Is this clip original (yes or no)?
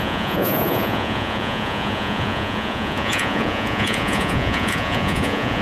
no